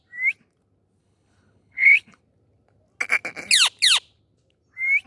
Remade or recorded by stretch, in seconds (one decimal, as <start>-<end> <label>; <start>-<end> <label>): 0.0-1.0 recorded; 1.0-2.2 remade; 2.2-5.1 recorded